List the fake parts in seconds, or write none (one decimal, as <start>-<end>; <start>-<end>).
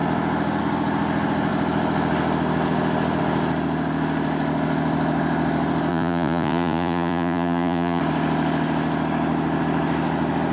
5.9-8.0